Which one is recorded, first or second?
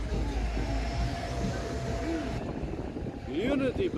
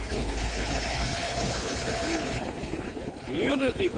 first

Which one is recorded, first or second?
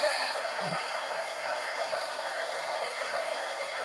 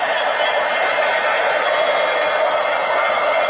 second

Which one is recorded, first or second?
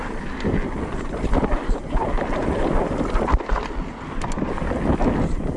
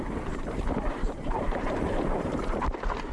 first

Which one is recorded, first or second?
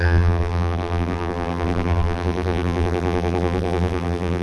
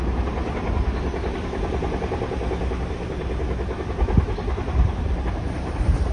second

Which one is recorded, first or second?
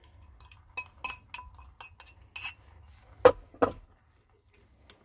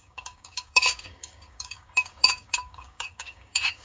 first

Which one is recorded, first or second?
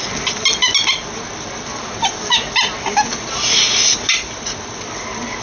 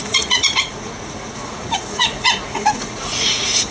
first